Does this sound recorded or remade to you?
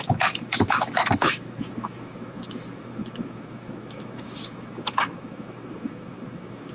remade